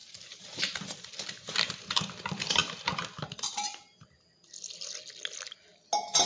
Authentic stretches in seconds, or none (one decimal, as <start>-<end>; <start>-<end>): 1.8-6.3